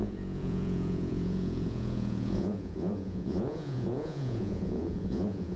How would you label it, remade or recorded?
remade